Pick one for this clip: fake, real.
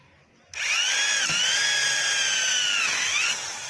real